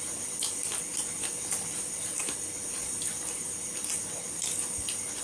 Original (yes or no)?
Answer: yes